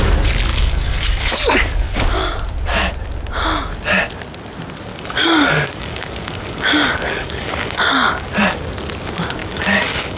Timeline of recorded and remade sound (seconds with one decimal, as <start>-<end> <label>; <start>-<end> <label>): 0.0-0.5 recorded; 0.5-2.0 remade; 2.0-4.9 recorded; 4.9-8.3 remade; 8.3-9.4 recorded; 9.4-10.2 remade